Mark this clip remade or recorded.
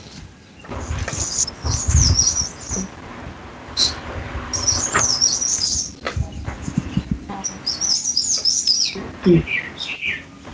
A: recorded